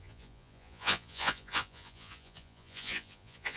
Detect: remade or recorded remade